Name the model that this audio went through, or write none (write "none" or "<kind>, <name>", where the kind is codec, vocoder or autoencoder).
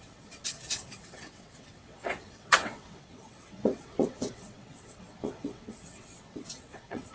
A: vocoder, WaveNeXt